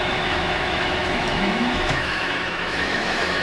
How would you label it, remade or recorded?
remade